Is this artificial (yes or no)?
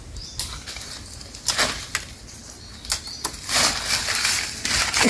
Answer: no